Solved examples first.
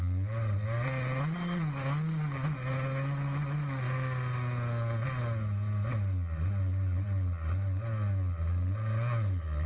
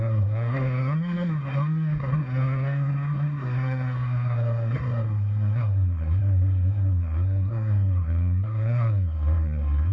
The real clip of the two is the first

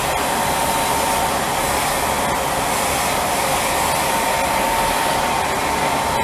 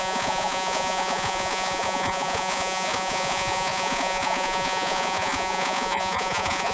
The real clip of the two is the first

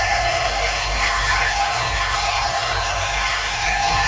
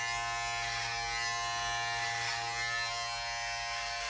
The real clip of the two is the second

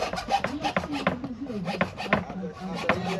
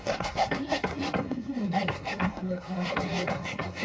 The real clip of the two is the first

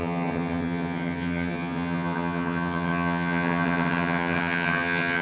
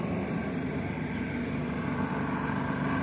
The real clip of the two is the second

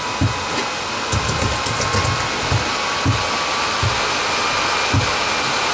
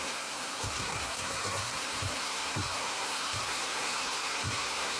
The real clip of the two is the first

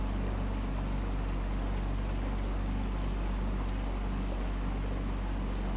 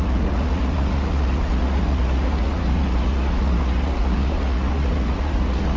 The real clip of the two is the first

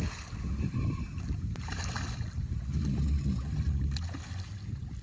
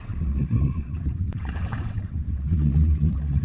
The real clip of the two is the first